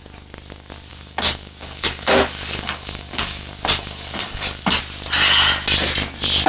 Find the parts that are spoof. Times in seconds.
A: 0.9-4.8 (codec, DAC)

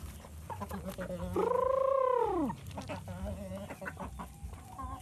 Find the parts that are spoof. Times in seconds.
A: none